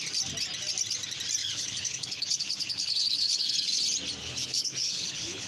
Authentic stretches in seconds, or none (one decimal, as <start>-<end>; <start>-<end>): 0.0-1.4; 3.8-4.2